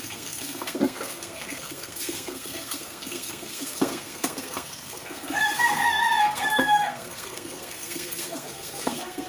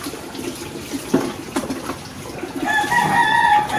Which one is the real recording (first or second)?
second